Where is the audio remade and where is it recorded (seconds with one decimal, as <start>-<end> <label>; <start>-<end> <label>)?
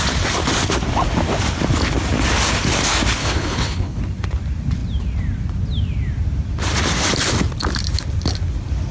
0.0-3.2 recorded; 3.2-4.0 remade; 4.0-8.9 recorded